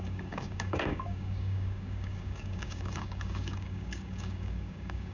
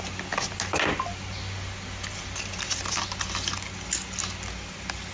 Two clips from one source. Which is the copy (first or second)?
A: first